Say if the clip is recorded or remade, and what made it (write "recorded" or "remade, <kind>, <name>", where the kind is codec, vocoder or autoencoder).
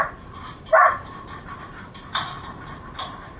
remade, vocoder, BigVGAN v2